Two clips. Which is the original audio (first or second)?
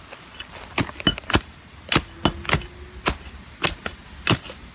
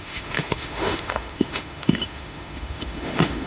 first